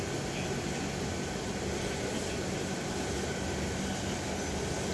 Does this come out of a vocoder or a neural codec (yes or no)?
no